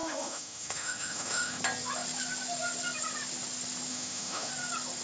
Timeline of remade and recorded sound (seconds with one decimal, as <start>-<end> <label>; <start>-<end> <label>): 0.0-1.6 remade; 1.6-3.9 recorded; 3.9-4.5 remade; 4.5-5.0 recorded